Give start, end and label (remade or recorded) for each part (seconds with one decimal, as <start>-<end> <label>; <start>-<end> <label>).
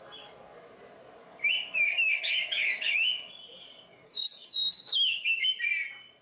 0.0-1.2 recorded; 1.2-3.3 remade; 3.3-3.9 recorded; 3.9-5.5 remade; 5.5-6.2 recorded